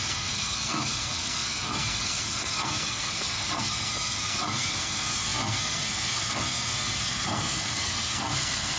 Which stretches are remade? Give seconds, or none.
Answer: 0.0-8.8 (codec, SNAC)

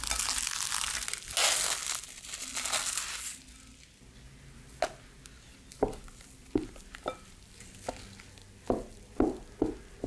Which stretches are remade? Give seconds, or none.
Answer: none